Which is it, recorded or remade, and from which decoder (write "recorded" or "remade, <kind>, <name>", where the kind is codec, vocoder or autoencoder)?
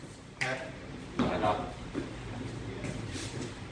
remade, vocoder, BigVGAN v2